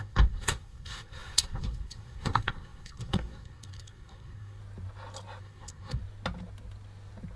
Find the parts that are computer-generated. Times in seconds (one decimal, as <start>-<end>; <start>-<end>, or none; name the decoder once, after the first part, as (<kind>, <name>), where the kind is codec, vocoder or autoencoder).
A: 0.0-4.6 (codec, SNAC); 5.4-6.0